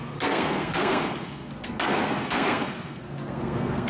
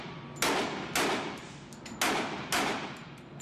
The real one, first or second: second